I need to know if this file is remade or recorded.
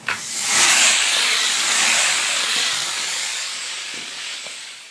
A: remade